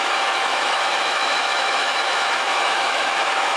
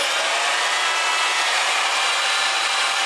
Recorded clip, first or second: second